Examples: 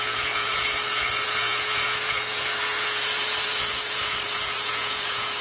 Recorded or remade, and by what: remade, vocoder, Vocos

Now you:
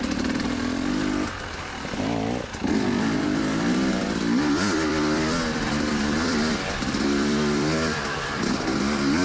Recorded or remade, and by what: remade, vocoder, BigVGAN v2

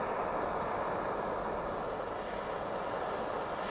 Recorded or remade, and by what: recorded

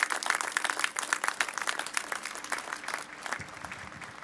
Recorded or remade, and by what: recorded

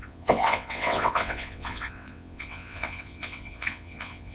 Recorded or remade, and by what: remade, vocoder, WaveNeXt